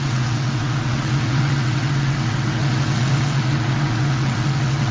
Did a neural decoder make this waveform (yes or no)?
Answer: yes